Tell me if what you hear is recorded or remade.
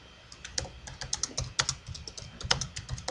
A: recorded